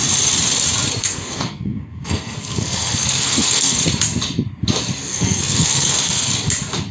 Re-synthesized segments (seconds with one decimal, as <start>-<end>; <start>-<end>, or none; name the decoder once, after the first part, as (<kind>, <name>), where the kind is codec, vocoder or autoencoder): 1.0-3.8 (codec, SNAC); 5.0-6.3